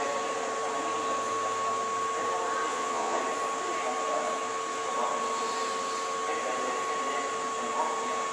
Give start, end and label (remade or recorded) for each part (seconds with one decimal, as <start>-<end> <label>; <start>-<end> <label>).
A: 0.0-2.7 recorded; 2.7-3.2 remade; 3.2-8.3 recorded